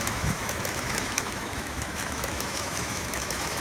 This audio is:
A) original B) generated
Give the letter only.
B